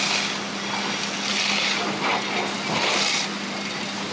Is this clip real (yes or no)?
yes